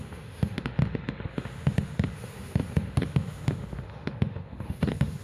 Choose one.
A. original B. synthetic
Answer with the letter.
B